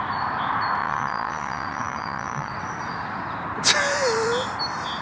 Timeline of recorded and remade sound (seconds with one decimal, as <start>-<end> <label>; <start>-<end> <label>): 0.0-0.8 recorded; 0.8-2.5 remade; 2.5-5.0 recorded